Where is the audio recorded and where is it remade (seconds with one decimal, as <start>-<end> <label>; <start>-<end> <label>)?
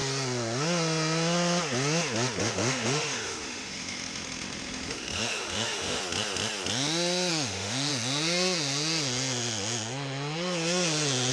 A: 0.0-2.4 recorded; 2.4-6.0 remade; 6.0-7.3 recorded; 7.3-7.9 remade; 7.9-11.3 recorded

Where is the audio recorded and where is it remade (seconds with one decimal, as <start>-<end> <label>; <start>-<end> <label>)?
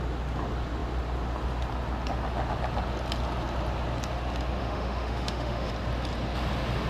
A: 0.0-4.6 recorded; 4.6-5.7 remade; 5.7-6.9 recorded